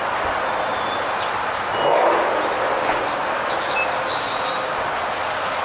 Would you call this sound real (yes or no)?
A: yes